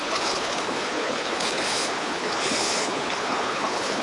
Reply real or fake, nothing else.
fake